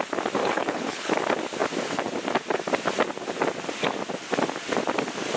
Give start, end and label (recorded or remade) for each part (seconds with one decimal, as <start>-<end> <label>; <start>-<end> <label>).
0.0-0.4 recorded; 0.4-1.1 remade; 1.1-5.4 recorded